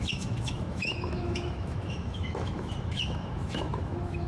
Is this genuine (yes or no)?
no